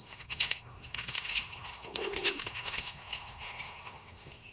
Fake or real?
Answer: fake